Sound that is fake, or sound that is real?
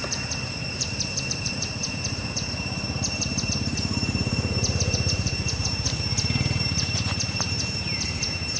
fake